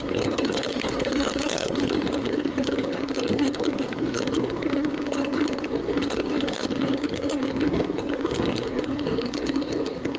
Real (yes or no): no